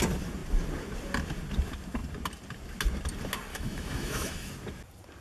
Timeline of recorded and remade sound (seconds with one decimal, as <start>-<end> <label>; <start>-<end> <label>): 0.0-3.5 recorded; 3.5-4.5 remade; 4.5-5.2 recorded